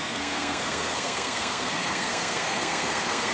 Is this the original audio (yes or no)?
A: no